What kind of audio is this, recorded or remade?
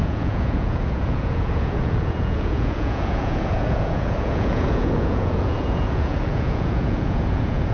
remade